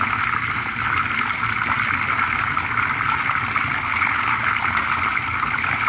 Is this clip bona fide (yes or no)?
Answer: yes